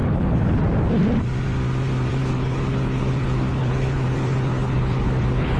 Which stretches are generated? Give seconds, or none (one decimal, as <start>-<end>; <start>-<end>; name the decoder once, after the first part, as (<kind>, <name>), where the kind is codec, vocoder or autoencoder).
0.0-0.6 (codec, HILCodec); 2.1-5.6

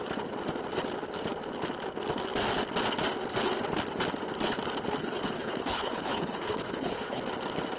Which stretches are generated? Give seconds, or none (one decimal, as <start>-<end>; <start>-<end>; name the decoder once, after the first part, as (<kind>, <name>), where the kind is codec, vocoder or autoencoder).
5.0-7.2 (codec, HILCodec)

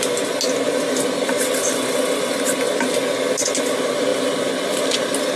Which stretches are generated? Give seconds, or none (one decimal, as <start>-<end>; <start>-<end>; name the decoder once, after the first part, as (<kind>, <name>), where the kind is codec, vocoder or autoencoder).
none

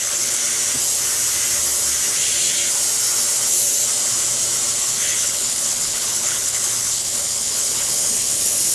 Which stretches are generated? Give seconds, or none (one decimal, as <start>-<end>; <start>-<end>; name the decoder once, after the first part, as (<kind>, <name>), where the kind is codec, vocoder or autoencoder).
0.0-0.4 (codec, HILCodec); 4.8-8.7